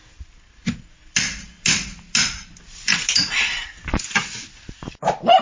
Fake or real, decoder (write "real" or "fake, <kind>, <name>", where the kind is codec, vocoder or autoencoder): real